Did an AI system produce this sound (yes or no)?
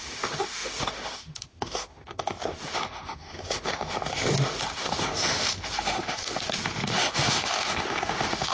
yes